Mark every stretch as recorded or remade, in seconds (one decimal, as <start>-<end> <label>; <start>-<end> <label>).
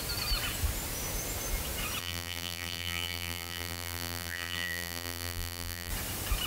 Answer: 0.0-2.0 recorded; 2.0-5.9 remade; 5.9-6.5 recorded